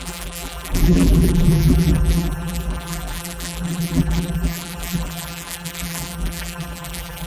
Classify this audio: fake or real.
fake